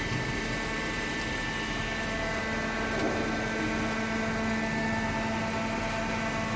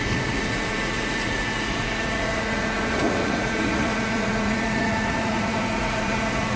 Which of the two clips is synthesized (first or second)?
second